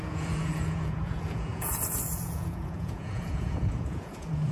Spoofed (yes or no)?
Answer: yes